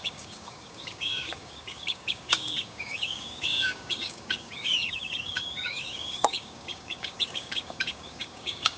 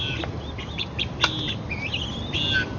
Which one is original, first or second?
second